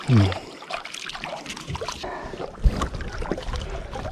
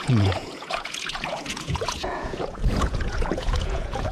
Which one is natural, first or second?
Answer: first